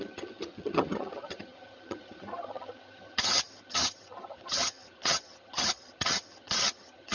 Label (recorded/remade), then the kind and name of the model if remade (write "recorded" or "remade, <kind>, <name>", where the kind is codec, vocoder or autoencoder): remade, vocoder, HiFi-GAN